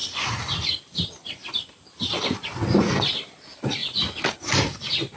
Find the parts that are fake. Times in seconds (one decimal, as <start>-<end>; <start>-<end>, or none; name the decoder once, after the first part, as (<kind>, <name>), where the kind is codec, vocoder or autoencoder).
none